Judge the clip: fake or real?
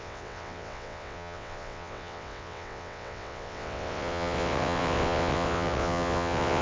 fake